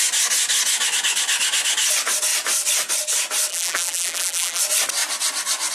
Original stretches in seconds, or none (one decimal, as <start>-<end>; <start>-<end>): 0.0-3.5; 4.6-5.7